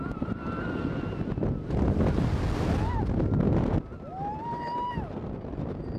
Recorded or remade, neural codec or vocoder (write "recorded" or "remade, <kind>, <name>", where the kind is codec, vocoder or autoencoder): recorded